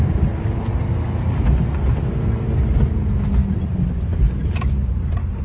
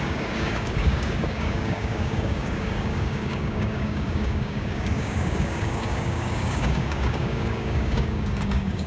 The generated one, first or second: second